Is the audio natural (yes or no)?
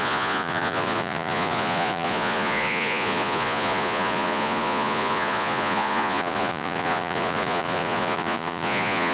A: no